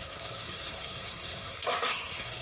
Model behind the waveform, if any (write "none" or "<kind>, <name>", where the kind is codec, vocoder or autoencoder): codec, SNAC